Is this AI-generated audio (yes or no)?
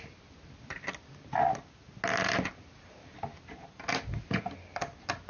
no